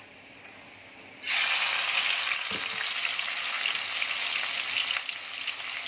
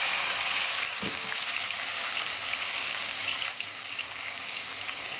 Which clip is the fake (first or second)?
second